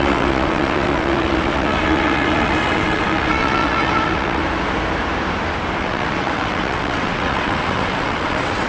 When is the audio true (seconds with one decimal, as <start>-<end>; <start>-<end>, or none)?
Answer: 4.4-5.8